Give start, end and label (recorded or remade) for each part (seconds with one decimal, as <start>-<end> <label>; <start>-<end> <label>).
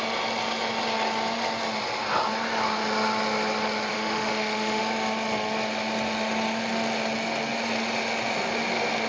0.0-3.9 recorded; 3.9-4.8 remade; 4.8-9.1 recorded